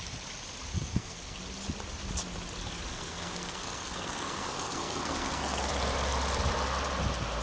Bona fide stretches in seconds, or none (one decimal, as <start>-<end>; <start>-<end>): 0.0-0.7; 1.4-2.9; 5.7-7.4